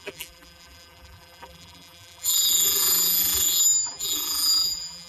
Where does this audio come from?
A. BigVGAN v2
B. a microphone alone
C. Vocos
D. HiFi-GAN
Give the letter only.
A